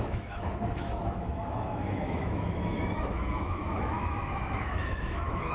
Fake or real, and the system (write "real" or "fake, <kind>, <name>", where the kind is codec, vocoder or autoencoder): fake, autoencoder, DAC-VAE